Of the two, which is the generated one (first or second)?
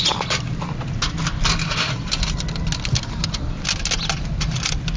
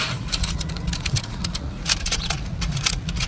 second